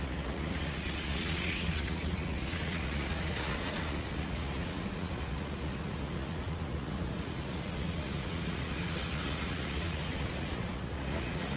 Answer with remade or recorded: remade